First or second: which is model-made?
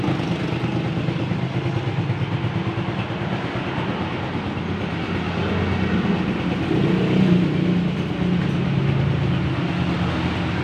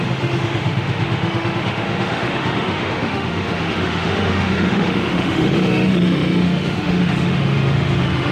second